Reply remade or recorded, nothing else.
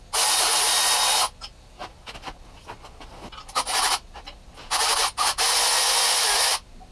recorded